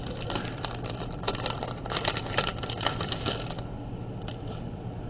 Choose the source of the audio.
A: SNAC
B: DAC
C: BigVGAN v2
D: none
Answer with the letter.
C